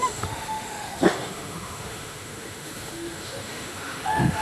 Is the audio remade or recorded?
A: remade